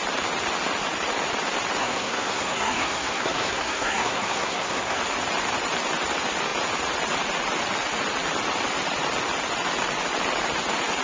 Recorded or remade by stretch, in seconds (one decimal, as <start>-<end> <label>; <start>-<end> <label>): 0.0-1.8 recorded; 1.8-5.0 remade; 5.0-11.0 recorded